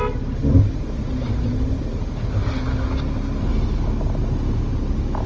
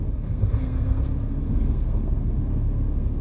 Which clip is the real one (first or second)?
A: first